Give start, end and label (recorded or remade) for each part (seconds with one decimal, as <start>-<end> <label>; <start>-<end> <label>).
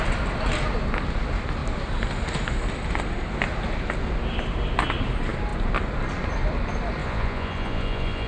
0.0-7.0 recorded; 7.0-8.3 remade